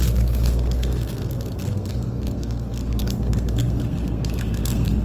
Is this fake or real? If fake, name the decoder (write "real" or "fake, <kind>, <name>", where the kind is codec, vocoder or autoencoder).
fake, codec, SNAC